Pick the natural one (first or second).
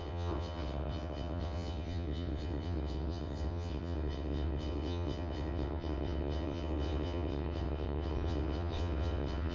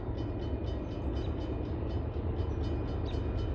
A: second